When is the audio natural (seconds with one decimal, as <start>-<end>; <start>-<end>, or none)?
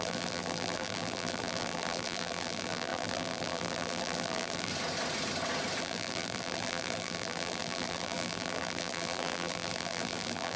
4.7-5.8